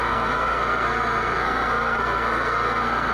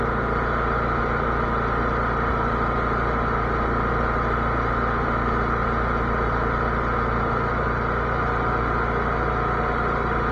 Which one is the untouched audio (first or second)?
second